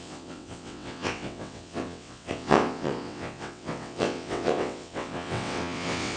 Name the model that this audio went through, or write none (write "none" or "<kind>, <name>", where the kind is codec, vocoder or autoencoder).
vocoder, WaveNeXt